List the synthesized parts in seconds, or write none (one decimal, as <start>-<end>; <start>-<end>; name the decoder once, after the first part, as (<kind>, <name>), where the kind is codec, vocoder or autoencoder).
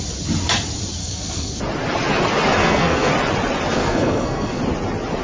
1.0-1.6 (codec, SNAC); 2.6-3.1; 3.8-4.6